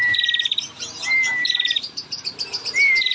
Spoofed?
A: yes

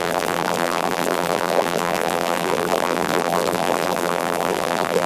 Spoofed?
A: yes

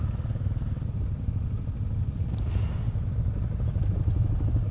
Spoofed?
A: yes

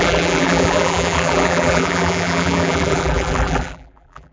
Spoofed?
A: yes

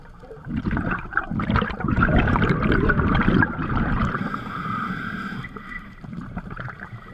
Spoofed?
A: yes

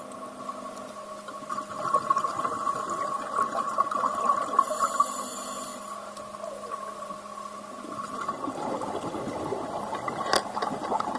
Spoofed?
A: no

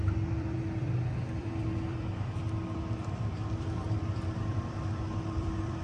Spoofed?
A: yes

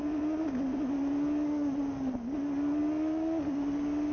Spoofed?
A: no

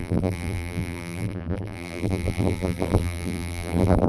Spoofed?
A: yes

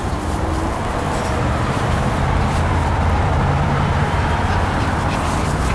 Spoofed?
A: yes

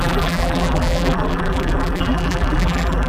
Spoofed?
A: yes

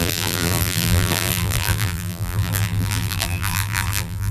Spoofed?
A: yes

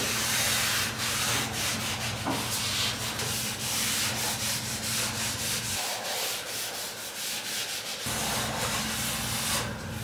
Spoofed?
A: no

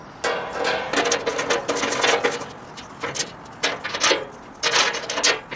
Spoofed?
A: no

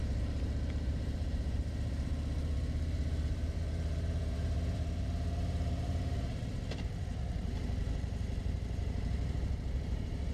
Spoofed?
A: yes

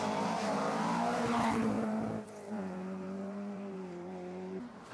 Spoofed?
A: yes